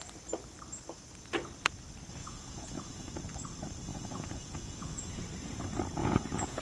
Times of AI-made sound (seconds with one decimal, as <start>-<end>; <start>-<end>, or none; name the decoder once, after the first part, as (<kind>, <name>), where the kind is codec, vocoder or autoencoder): 2.2-3.1 (vocoder, Vocos); 3.9-5.2; 6.0-6.6